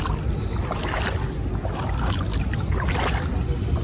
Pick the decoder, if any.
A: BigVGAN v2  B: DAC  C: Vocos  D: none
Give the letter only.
D